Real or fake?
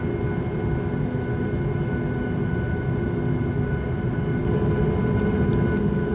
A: real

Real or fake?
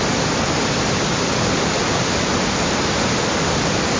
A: fake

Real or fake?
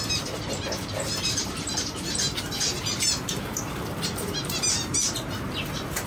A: fake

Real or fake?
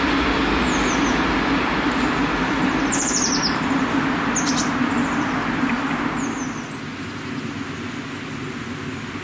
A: real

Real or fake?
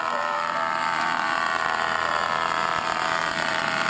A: fake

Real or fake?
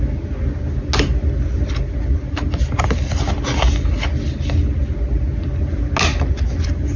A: real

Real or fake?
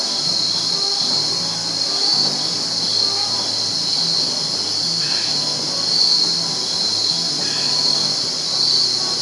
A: real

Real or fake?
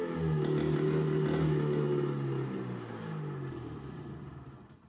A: real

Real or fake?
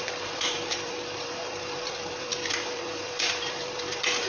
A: fake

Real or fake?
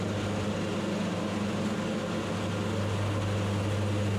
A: real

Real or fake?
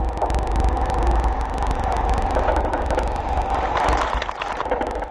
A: real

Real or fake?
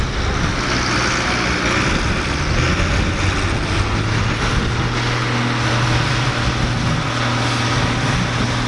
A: real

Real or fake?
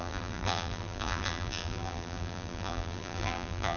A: fake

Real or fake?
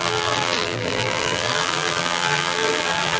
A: fake